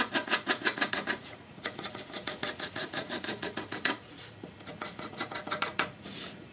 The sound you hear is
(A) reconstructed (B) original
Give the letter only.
A